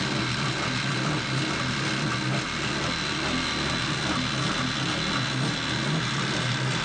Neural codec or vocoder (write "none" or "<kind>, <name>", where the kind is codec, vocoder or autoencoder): none